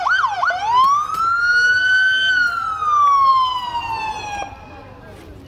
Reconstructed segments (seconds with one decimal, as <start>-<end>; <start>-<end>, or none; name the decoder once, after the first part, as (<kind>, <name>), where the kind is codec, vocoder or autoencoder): none